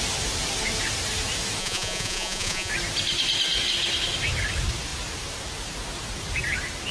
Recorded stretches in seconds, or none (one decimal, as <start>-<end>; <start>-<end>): 0.0-1.6; 2.7-6.9